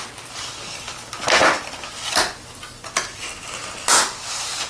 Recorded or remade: recorded